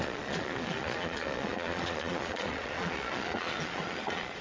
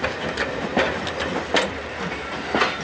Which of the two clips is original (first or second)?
second